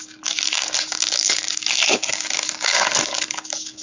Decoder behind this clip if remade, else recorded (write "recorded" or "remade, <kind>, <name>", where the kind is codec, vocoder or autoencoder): remade, codec, DAC